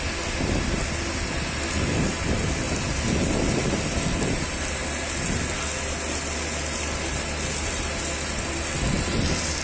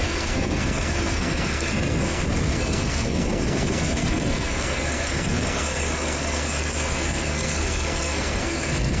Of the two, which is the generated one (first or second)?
second